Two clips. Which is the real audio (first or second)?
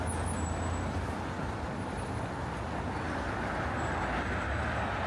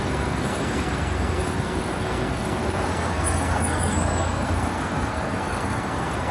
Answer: first